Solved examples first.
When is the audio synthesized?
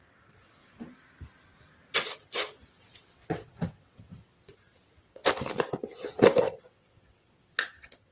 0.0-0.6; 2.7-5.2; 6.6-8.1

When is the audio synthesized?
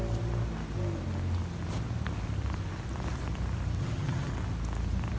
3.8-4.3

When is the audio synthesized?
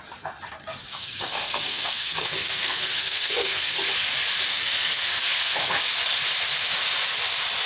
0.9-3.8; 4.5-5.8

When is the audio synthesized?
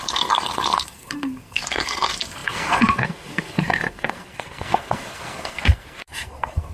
0.0-6.7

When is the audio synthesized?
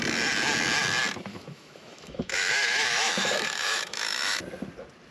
1.3-4.4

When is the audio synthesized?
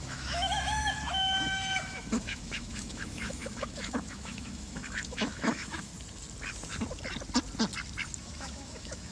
0.0-5.9; 8.2-9.1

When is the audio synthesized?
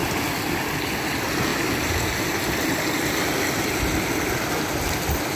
none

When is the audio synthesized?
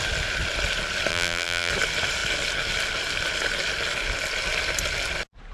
1.1-1.7